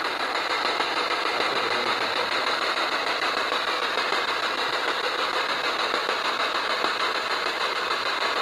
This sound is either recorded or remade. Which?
remade